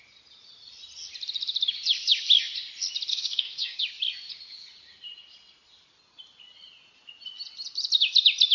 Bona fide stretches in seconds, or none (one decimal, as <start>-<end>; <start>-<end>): 0.0-3.1; 3.8-8.5